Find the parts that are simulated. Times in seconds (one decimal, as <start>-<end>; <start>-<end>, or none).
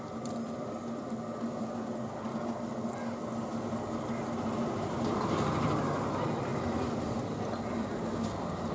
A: none